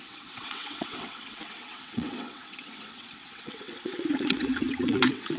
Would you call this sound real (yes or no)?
no